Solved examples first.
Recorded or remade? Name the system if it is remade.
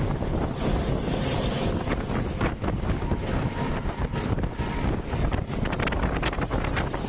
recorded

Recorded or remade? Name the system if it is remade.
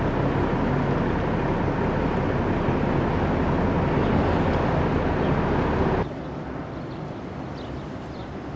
recorded